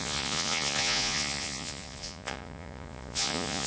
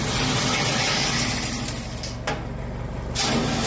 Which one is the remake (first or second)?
first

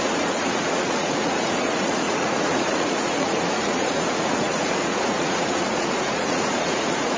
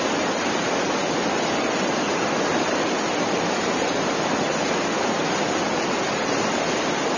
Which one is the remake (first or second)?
first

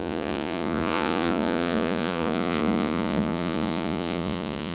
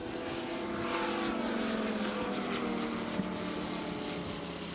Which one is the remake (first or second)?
first